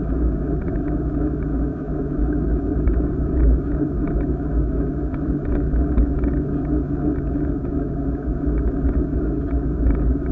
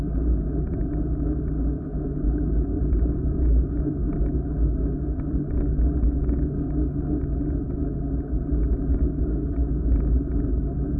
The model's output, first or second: first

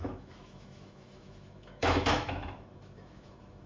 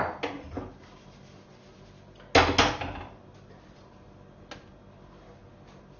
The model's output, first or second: first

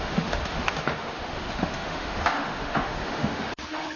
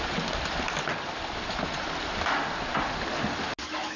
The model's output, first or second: first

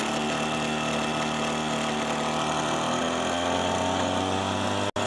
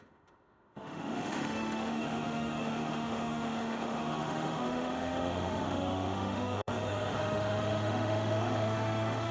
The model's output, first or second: second